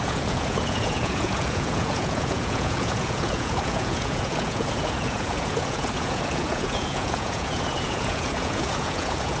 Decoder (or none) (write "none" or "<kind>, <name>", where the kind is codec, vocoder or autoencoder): vocoder, Vocos